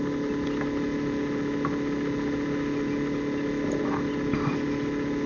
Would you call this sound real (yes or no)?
yes